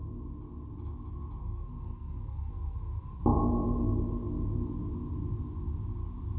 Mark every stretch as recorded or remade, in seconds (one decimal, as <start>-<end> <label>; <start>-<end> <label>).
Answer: 0.0-1.4 recorded; 1.4-3.2 remade; 3.2-6.4 recorded